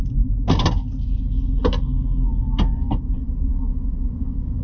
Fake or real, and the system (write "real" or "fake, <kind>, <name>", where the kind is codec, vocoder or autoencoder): real